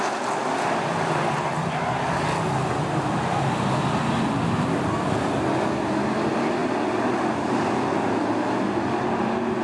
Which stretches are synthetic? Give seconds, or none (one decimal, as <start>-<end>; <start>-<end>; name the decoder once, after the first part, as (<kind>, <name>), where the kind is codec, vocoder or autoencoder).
none